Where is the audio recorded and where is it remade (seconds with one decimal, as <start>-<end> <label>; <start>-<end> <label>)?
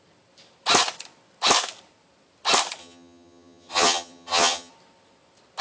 0.0-2.8 recorded; 2.8-4.7 remade; 4.7-5.6 recorded